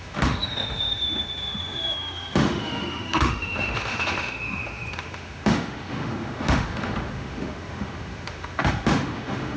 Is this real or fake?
fake